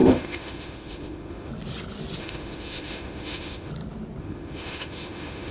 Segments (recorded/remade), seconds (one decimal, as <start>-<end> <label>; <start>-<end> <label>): 0.0-1.5 remade; 1.5-2.2 recorded; 2.2-3.7 remade; 3.7-4.2 recorded; 4.2-5.5 remade